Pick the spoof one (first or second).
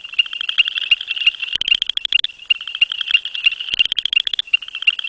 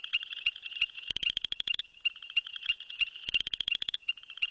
second